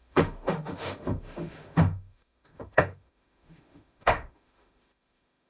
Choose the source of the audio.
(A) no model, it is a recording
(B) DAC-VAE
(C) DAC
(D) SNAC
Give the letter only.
B